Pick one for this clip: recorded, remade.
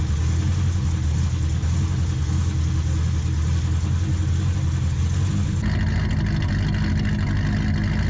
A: recorded